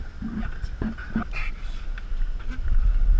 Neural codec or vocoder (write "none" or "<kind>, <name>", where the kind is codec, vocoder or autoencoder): none